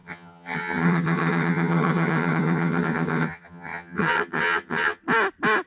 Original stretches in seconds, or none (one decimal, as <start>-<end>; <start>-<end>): 5.0-5.7